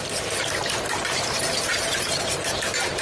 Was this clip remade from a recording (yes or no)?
no